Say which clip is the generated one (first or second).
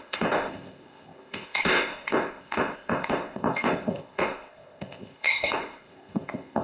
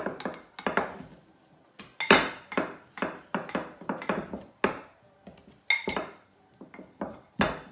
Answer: first